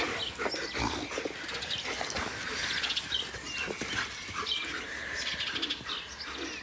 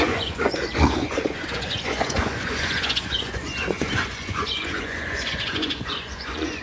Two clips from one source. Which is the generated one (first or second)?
second